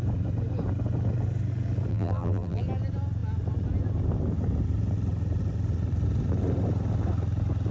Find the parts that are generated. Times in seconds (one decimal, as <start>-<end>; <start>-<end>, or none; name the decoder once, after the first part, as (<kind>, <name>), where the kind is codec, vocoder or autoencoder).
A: 1.9-2.6 (vocoder, BigVGAN v2)